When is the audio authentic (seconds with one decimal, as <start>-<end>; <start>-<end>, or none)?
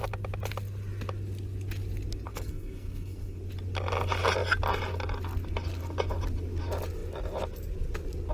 0.0-2.3; 3.4-8.3